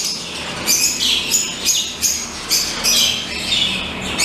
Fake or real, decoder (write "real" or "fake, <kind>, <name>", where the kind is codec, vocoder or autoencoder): real